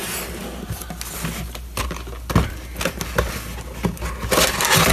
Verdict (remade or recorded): recorded